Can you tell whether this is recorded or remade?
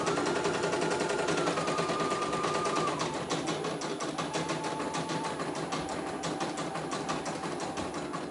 recorded